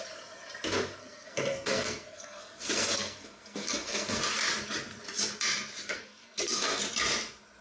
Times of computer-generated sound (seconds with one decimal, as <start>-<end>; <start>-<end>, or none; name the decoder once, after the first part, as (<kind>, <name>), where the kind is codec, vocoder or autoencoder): 1.0-4.2 (codec, SNAC); 5.8-6.8